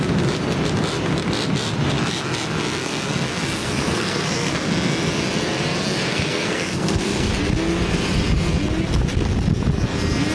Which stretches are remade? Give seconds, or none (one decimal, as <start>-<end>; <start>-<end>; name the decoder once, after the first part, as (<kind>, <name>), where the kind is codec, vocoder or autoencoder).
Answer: 2.8-4.7 (codec, SNAC); 6.1-7.3

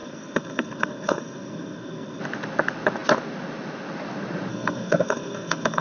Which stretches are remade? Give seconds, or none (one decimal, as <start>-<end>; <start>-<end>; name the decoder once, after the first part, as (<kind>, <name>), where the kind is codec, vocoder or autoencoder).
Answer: 0.0-2.2 (codec, SNAC); 4.5-5.8

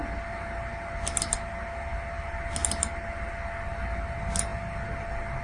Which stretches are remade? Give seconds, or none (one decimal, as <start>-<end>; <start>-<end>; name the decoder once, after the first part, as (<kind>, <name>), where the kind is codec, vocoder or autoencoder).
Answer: none